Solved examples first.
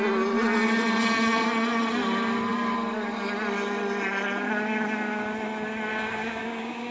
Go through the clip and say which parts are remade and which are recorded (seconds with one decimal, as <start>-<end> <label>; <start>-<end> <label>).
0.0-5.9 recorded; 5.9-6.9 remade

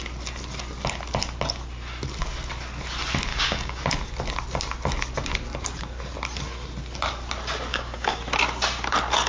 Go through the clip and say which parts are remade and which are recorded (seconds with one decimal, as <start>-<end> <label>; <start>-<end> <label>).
0.0-3.3 recorded; 3.3-3.8 remade; 3.8-7.7 recorded; 7.7-8.2 remade; 8.2-9.3 recorded

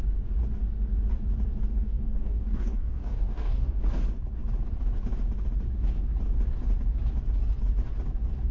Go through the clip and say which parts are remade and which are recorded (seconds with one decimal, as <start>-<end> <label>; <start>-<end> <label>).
0.0-1.7 recorded; 1.7-3.8 remade; 3.8-8.5 recorded

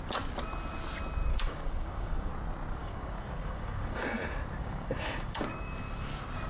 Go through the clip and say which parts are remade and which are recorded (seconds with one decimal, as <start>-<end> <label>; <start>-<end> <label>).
0.0-1.3 recorded; 1.3-2.3 remade; 2.3-2.8 recorded; 2.8-4.0 remade; 4.0-4.6 recorded; 4.6-5.5 remade; 5.5-6.5 recorded